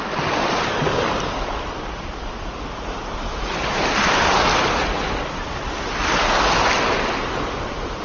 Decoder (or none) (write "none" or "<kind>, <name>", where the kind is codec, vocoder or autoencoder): none